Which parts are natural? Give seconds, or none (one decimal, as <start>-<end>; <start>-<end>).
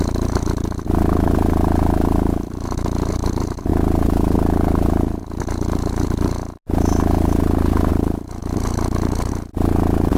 0.0-10.2